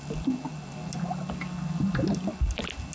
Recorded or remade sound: recorded